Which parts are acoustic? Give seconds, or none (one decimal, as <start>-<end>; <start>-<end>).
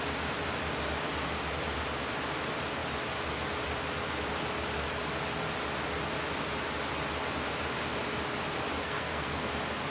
0.0-8.8; 9.5-9.9